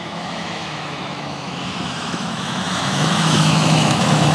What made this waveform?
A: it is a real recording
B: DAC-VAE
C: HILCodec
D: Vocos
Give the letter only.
B